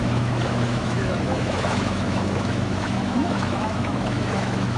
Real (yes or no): no